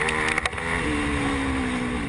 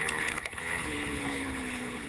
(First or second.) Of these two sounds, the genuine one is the first